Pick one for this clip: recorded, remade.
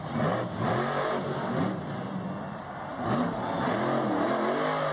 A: recorded